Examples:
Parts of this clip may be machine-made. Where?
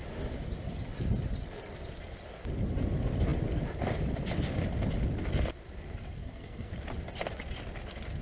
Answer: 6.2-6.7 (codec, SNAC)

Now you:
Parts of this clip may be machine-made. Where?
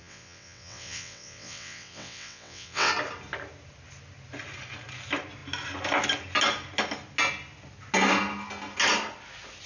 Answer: 0.0-2.9 (vocoder, WaveNeXt)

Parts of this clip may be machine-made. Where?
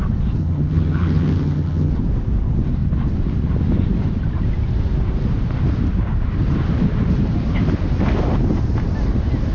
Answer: 0.4-1.9 (vocoder, HiFi-GAN)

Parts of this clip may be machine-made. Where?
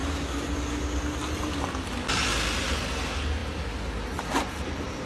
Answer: none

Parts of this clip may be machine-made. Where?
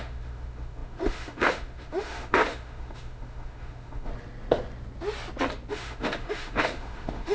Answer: 0.0-4.1 (autoencoder, DAC-VAE); 5.7-7.3